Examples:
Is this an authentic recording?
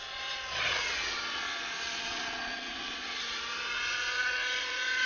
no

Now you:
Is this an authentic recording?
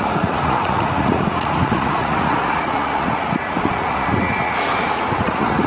no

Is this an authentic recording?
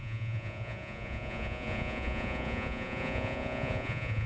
no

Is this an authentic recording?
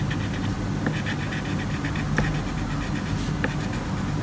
yes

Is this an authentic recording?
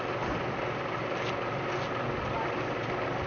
yes